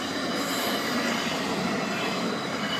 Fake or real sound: real